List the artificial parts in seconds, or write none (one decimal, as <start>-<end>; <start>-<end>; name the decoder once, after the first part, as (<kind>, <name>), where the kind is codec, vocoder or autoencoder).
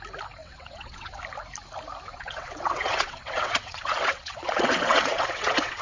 0.4-1.2 (vocoder, WaveNeXt); 2.1-5.8